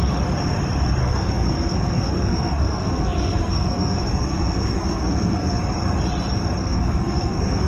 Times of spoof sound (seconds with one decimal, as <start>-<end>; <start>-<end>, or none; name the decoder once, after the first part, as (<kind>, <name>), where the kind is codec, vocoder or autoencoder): 1.0-5.6 (codec, SNAC); 6.6-7.7